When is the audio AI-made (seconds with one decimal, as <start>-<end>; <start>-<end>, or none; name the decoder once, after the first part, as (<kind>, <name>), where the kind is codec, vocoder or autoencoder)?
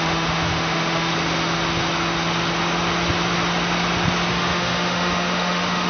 0.0-1.1 (autoencoder, DAC-VAE); 4.3-5.9